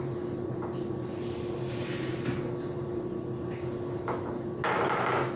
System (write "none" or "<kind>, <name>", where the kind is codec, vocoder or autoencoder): none